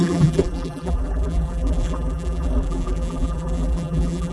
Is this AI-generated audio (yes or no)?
yes